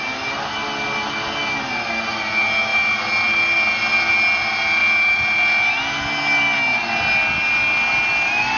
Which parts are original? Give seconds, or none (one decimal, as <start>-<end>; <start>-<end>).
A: 0.0-8.6